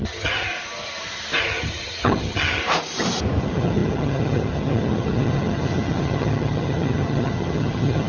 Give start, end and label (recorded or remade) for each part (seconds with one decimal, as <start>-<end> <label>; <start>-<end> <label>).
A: 0.0-0.5 remade; 0.5-1.4 recorded; 1.4-2.6 remade; 2.6-3.4 recorded; 3.4-8.1 remade